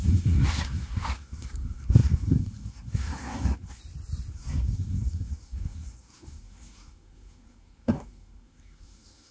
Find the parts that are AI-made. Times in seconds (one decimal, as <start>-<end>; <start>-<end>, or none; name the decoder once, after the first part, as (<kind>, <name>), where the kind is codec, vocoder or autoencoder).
0.0-3.8 (codec, SNAC); 4.3-9.3